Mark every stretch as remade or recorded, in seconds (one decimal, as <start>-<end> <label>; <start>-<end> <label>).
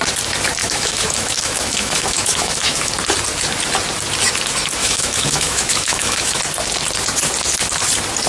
0.0-0.6 recorded; 0.6-2.9 remade; 2.9-4.8 recorded; 4.8-6.4 remade; 6.4-8.3 recorded